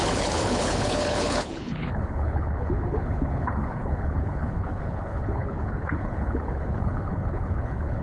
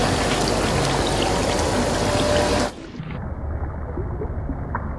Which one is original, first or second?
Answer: second